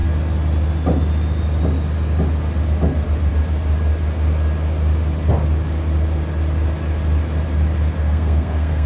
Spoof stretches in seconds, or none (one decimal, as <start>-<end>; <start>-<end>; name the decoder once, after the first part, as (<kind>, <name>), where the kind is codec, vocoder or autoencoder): 8.0-8.9 (codec, SNAC)